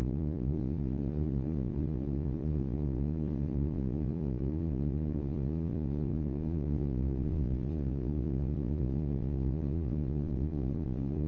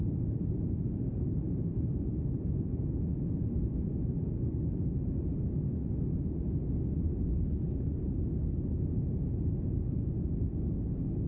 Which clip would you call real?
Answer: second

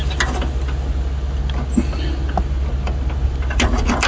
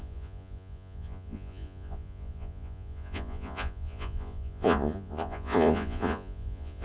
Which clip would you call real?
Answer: first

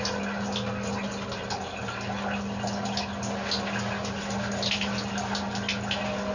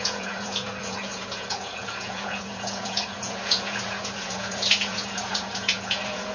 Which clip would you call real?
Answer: first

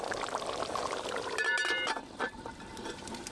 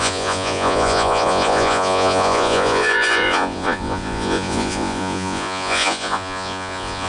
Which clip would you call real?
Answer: first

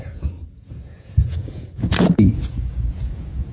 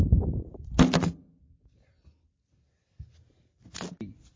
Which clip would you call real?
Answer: second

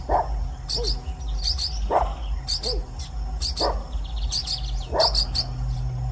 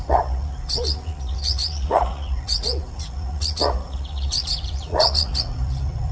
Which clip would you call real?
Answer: first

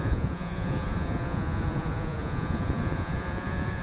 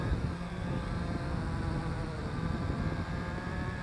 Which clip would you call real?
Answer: second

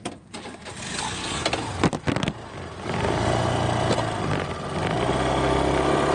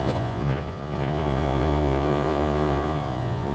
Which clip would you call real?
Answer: first